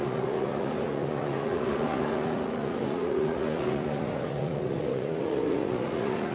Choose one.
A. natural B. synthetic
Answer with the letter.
B